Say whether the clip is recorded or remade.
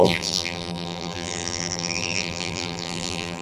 remade